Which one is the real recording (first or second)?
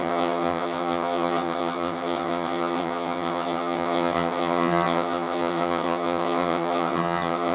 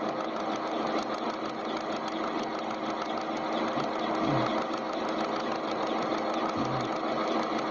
second